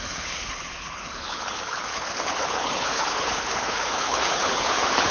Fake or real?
fake